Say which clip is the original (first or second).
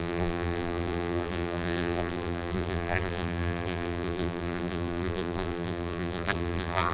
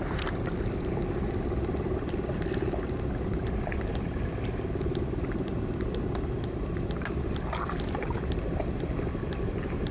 second